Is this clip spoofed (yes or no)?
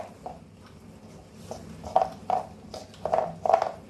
no